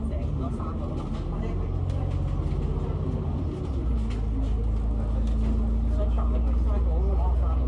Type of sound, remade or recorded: recorded